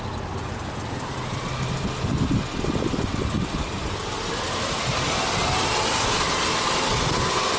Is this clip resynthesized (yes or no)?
no